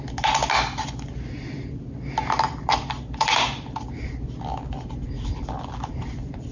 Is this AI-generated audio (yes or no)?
no